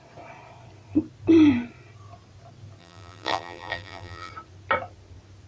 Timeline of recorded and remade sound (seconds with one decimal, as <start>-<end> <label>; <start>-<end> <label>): 0.0-2.8 recorded; 2.8-4.3 remade; 4.3-5.5 recorded